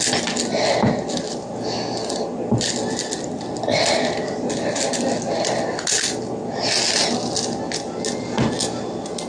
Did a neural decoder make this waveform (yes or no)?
no